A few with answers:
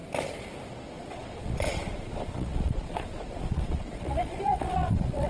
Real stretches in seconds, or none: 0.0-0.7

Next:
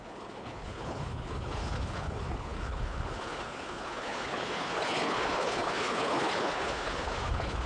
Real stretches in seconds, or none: none

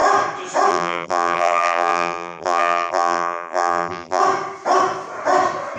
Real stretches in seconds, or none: 0.0-0.7; 4.2-5.8

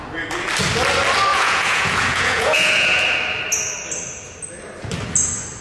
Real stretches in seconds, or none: 0.0-1.3; 3.0-5.6

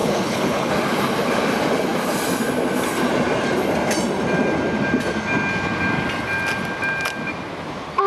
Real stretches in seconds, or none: 0.7-8.1

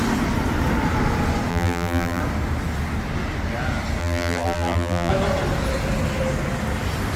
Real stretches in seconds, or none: 0.0-1.5; 2.2-4.0; 5.1-7.2

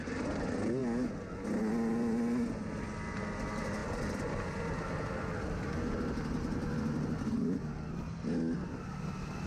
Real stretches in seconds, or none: 0.0-3.8; 7.2-9.5

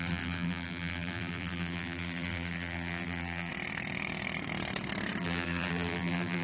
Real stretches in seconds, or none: 3.5-5.2